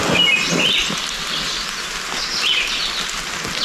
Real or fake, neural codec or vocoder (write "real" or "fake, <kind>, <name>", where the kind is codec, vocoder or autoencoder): real